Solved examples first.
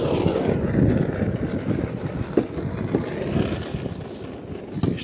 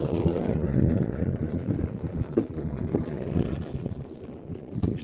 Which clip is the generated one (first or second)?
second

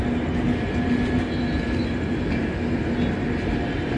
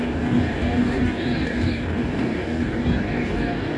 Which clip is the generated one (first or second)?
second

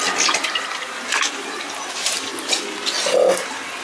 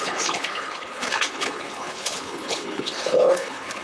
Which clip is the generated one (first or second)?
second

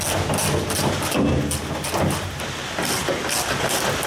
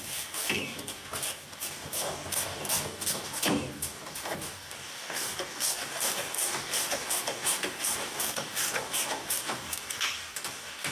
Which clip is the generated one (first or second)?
second